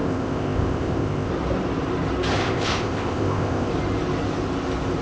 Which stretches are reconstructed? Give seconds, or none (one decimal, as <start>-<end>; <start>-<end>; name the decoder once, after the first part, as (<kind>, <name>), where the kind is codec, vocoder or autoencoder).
0.0-1.3 (codec, ZipCodec); 2.4-3.7